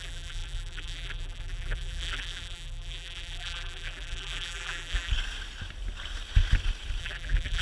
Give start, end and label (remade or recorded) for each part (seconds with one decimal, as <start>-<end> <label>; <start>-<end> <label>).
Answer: 0.0-5.1 remade; 5.1-7.0 recorded; 7.0-7.6 remade